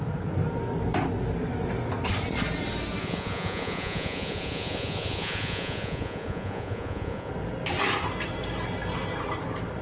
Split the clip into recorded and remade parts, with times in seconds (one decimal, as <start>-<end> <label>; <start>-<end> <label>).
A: 0.0-3.0 recorded; 3.0-7.3 remade; 7.3-9.8 recorded